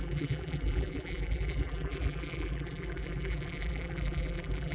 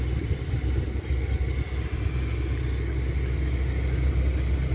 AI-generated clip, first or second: first